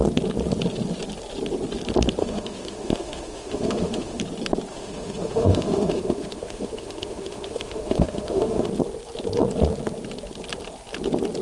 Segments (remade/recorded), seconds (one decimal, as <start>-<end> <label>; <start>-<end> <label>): 0.0-2.2 recorded; 2.2-4.2 remade; 4.2-4.7 recorded; 4.7-8.7 remade; 8.7-11.4 recorded